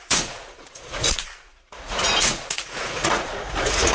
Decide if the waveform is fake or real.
fake